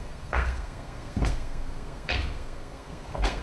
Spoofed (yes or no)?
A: yes